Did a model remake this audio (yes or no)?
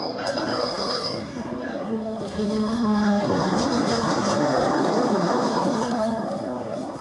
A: yes